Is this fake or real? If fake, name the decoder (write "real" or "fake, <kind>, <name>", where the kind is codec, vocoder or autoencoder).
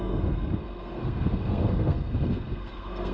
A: fake, codec, SNAC